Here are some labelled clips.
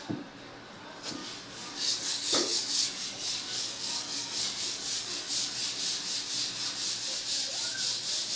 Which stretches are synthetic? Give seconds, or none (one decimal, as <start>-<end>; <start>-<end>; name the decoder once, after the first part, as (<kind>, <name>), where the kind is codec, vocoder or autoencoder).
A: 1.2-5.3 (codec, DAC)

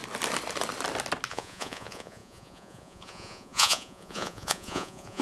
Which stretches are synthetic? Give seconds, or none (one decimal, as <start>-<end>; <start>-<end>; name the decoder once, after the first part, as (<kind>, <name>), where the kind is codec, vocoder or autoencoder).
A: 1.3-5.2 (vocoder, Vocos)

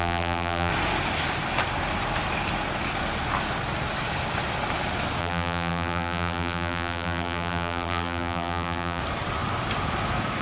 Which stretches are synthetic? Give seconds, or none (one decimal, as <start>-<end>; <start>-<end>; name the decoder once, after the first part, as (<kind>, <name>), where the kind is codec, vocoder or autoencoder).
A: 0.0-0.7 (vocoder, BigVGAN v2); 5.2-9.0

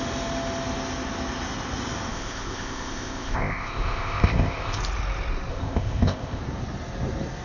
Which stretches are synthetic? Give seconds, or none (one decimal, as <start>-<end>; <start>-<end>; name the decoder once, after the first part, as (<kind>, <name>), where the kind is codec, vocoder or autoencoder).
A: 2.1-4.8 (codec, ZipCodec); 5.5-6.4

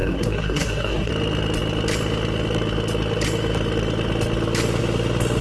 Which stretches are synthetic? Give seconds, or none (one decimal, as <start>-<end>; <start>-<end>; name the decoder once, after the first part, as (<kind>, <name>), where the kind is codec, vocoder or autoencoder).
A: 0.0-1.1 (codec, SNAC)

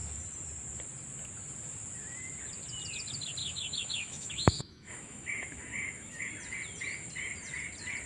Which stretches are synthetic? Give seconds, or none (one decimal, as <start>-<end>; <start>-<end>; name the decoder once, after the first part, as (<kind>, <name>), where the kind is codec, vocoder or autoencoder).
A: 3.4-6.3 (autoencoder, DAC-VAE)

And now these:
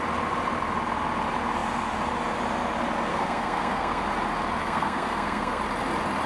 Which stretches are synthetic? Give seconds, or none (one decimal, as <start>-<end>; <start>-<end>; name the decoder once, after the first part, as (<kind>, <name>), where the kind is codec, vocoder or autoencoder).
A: 3.1-4.0 (codec, SNAC); 4.6-5.6